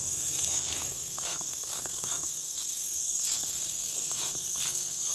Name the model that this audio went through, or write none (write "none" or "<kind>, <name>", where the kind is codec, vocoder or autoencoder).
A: codec, SNAC